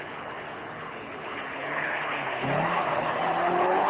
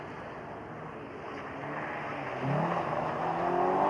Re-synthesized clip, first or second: first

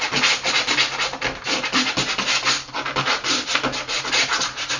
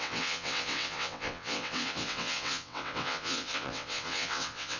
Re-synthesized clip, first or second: second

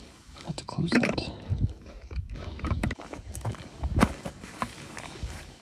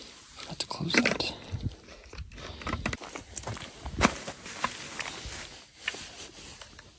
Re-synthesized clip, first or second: first